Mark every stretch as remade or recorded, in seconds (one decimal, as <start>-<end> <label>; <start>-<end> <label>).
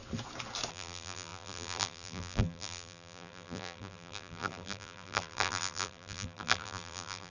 0.0-0.7 recorded; 0.7-7.3 remade